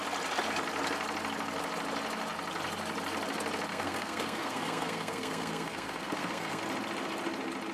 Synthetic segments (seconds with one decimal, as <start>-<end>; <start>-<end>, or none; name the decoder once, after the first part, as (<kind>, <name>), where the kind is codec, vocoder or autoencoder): 3.7-6.6 (codec, SNAC)